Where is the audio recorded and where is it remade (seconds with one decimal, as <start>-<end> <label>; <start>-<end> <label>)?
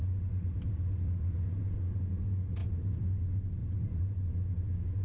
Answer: 0.0-2.6 recorded; 2.6-3.1 remade; 3.1-3.6 recorded; 3.6-4.3 remade; 4.3-5.0 recorded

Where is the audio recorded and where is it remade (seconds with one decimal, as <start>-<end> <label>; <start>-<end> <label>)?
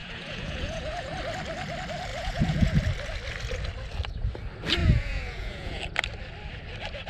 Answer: 0.0-1.1 remade; 1.1-2.1 recorded; 2.1-2.8 remade; 2.8-4.8 recorded; 4.8-5.8 remade; 5.8-7.1 recorded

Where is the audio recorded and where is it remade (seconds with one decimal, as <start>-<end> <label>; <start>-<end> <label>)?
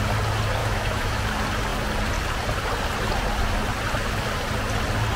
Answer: 0.0-0.6 recorded; 0.6-1.2 remade; 1.2-5.2 recorded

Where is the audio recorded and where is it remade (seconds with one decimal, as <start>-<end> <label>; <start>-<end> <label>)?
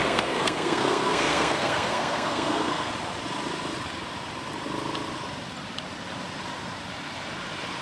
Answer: 0.0-2.9 remade; 2.9-7.8 recorded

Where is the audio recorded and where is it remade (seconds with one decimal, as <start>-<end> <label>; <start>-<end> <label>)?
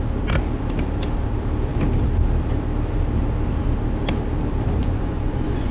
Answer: 0.0-4.8 recorded; 4.8-5.7 remade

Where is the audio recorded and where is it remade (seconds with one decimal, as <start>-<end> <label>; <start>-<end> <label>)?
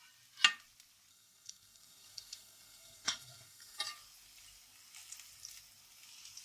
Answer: 0.0-1.1 recorded; 1.1-3.8 remade; 3.8-6.4 recorded